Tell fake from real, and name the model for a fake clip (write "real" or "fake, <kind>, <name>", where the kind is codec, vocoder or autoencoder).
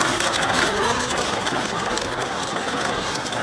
fake, codec, SNAC